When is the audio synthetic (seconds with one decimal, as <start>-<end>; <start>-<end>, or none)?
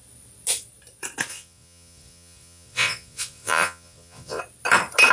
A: 1.3-4.4